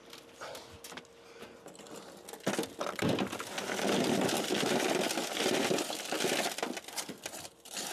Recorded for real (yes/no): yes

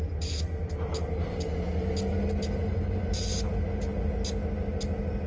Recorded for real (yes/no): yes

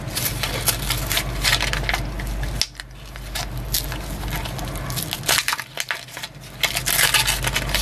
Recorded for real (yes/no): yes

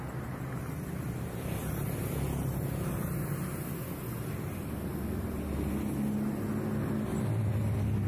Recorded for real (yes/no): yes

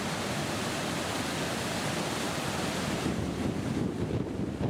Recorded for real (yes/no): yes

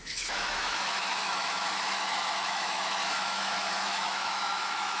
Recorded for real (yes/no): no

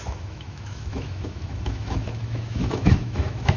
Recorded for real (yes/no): no